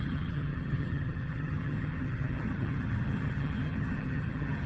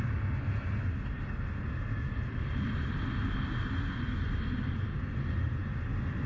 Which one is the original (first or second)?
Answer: second